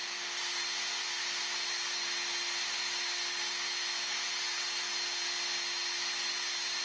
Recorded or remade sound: recorded